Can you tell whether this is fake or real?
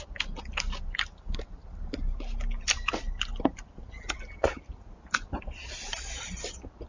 real